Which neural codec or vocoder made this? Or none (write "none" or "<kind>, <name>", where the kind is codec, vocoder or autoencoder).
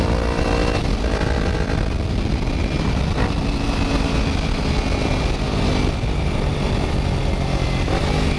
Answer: none